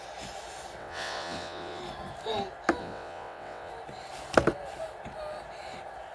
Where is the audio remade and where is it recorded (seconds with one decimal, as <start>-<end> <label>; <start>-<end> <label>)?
0.0-0.8 recorded; 0.8-1.8 remade; 1.8-2.8 recorded; 2.8-3.7 remade; 3.7-6.1 recorded